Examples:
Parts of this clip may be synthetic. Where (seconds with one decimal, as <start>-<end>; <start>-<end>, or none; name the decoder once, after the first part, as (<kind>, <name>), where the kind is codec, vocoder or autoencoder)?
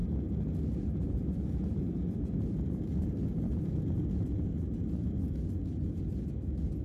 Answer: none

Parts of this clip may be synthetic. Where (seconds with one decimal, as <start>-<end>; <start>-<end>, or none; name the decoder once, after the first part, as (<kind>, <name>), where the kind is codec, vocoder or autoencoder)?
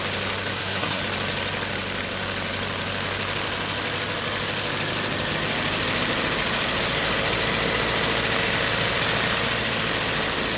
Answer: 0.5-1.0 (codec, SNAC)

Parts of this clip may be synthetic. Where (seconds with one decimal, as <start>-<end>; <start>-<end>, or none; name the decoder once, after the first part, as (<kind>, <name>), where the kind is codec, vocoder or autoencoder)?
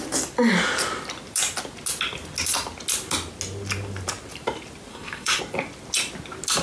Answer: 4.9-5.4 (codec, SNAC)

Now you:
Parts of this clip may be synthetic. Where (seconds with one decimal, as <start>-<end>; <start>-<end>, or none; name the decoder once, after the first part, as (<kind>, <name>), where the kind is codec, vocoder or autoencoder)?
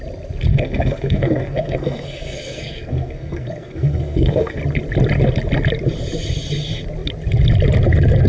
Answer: 0.5-4.6 (codec, SNAC)